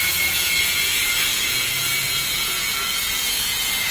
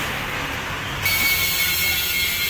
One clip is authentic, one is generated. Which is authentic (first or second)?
second